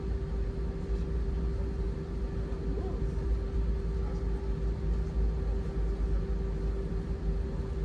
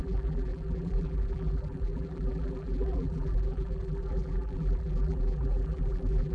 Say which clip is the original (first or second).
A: first